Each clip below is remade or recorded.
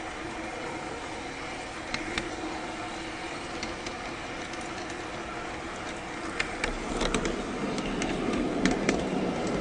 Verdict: recorded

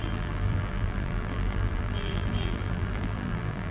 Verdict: remade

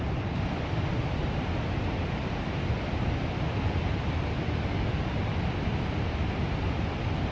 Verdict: recorded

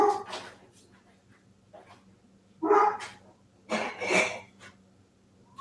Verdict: recorded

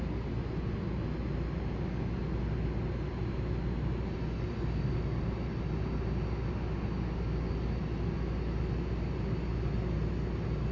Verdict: recorded